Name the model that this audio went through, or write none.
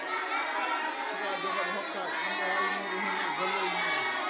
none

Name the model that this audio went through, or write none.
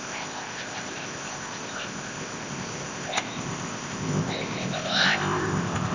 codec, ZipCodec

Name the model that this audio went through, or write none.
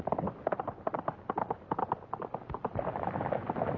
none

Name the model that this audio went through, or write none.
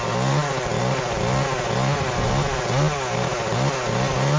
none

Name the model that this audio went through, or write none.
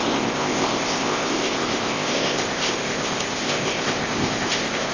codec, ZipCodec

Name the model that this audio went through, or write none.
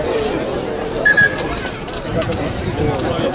none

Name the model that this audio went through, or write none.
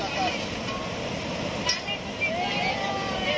none